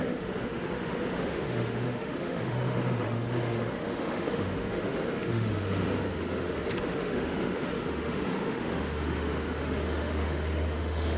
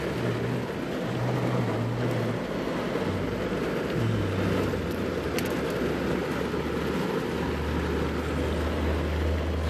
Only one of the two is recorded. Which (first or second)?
second